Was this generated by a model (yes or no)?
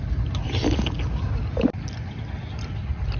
no